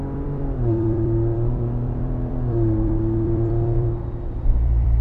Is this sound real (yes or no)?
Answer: no